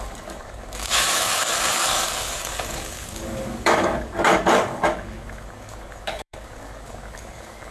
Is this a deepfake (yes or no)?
yes